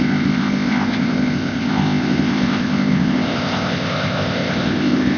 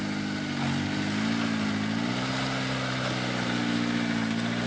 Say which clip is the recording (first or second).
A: second